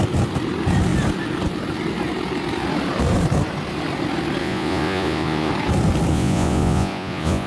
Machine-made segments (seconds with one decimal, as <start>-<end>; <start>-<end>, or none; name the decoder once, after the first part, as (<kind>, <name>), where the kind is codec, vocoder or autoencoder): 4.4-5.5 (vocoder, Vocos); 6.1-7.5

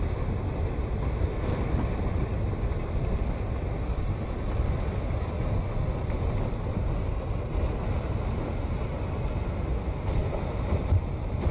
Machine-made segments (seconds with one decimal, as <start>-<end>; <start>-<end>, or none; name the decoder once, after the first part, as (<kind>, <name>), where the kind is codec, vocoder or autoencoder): none

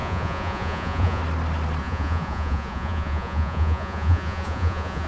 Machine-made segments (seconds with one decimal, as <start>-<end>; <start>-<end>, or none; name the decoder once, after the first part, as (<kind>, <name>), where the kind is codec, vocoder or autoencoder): 0.0-1.2 (vocoder, Vocos); 1.8-5.1

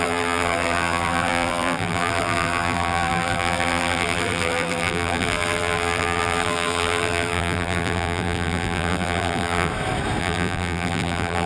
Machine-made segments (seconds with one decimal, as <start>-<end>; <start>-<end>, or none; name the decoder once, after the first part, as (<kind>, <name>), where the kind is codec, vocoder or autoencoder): 0.0-9.7 (vocoder, BigVGAN v2); 10.2-11.5

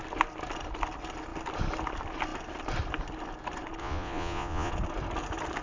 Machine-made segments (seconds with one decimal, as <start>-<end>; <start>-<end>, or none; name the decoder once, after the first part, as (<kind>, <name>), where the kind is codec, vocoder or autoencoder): 3.8-4.7 (vocoder, Vocos)